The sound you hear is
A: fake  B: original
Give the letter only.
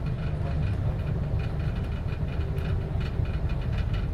B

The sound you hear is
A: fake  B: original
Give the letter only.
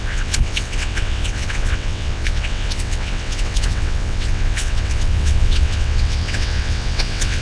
A